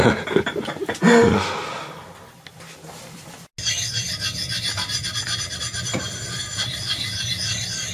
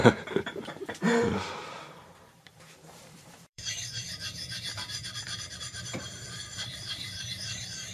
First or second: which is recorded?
first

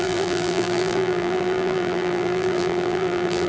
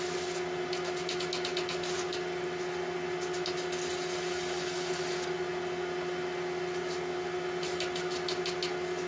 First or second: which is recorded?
second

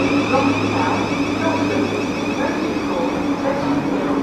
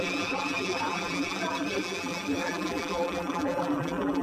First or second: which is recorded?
first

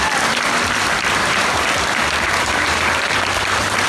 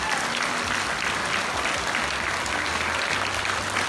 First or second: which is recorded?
second